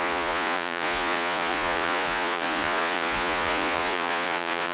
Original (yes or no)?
no